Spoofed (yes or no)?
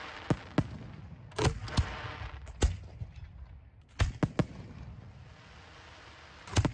no